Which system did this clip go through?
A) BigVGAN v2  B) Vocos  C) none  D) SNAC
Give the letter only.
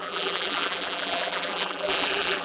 A